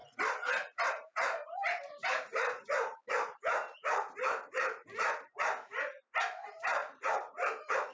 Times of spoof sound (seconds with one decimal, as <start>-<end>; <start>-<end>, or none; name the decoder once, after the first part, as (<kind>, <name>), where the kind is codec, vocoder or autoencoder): 0.9-5.3 (vocoder, BigVGAN v2); 6.3-7.9